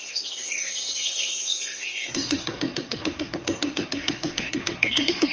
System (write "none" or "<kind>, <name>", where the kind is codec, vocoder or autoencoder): codec, SNAC